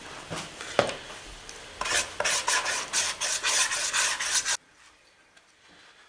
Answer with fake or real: real